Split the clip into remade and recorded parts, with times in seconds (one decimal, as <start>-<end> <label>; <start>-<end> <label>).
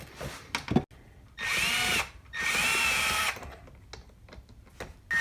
0.0-1.5 recorded; 1.5-3.6 remade; 3.6-5.2 recorded